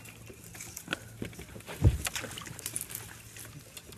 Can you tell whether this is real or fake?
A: real